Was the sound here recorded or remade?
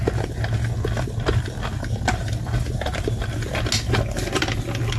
recorded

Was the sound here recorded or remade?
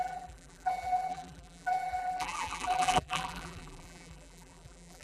remade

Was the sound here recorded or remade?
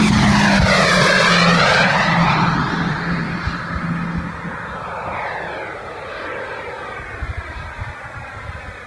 recorded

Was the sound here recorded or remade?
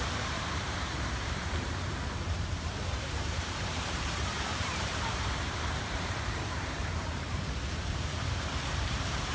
remade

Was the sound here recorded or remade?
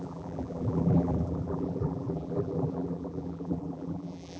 remade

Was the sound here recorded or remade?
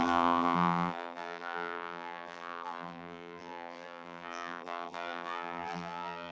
remade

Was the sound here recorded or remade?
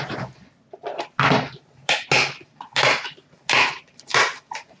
recorded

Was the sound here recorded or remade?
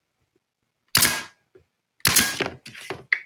recorded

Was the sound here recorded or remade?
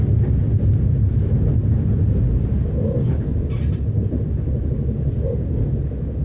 recorded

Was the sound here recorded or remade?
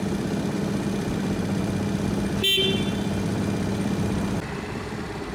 recorded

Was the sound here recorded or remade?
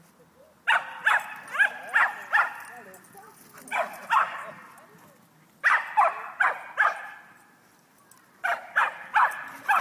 recorded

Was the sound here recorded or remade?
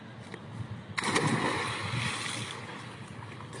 recorded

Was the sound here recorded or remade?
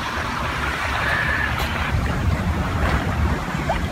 remade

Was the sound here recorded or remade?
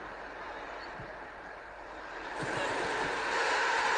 remade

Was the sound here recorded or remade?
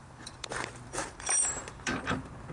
remade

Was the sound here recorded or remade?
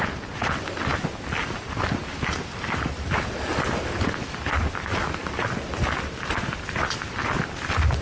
remade